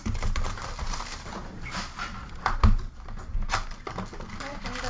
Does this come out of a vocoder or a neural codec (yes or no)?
no